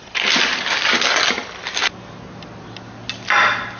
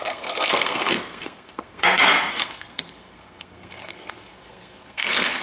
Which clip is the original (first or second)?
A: first